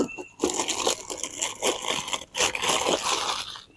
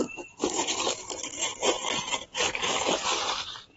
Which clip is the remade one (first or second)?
second